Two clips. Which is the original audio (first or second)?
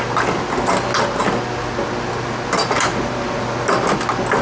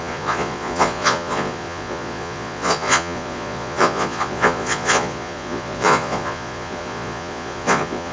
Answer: first